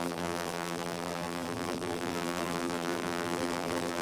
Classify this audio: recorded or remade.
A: remade